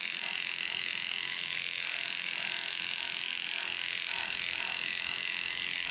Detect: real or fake fake